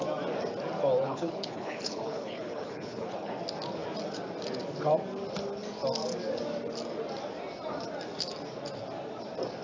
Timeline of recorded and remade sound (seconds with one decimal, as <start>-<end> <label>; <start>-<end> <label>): 0.0-1.0 recorded; 1.0-3.3 remade; 3.3-9.6 recorded